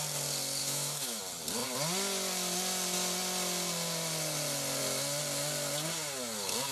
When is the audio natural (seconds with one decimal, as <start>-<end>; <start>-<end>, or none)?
0.0-0.6; 1.2-6.7